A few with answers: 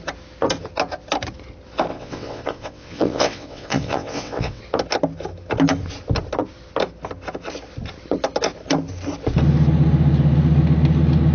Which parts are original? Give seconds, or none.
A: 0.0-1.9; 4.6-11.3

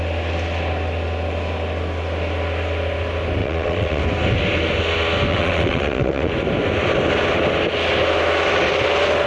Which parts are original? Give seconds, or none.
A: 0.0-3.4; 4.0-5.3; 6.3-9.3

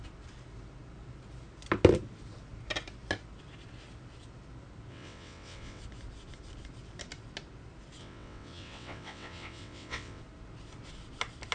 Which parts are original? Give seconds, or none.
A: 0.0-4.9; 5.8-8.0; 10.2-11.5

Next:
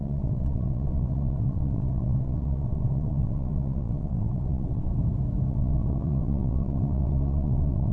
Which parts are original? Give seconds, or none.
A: 4.9-5.5

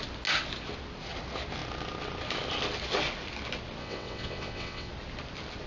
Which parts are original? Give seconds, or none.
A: 0.0-3.8; 4.9-5.7

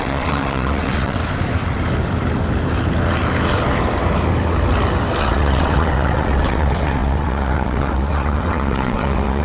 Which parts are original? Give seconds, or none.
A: 1.2-5.2

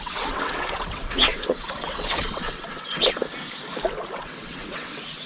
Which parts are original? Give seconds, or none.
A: 3.2-4.1